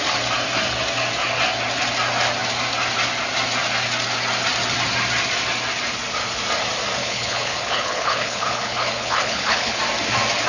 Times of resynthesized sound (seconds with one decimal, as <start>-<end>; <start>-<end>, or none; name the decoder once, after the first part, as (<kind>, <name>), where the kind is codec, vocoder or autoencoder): 7.0-9.8 (codec, HILCodec)